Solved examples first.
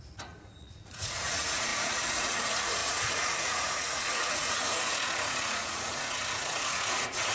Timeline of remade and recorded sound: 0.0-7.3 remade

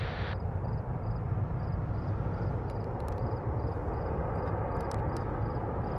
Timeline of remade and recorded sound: 0.0-0.9 remade; 0.9-2.7 recorded; 2.7-3.8 remade; 3.8-5.2 recorded; 5.2-6.0 remade

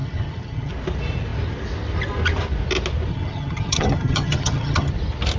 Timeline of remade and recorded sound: 0.0-0.7 remade; 0.7-3.1 recorded; 3.1-4.9 remade; 4.9-5.4 recorded

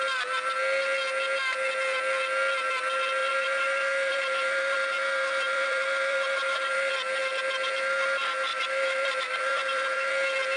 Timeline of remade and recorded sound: 0.0-3.2 recorded; 3.2-6.9 remade; 6.9-8.5 recorded; 8.5-10.1 remade; 10.1-10.6 recorded